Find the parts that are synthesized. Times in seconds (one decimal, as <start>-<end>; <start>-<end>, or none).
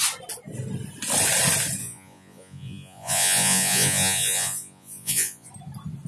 1.8-5.5